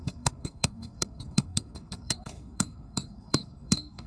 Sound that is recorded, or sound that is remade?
remade